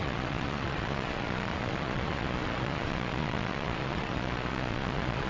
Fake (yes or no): yes